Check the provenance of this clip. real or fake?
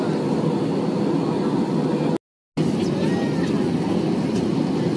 real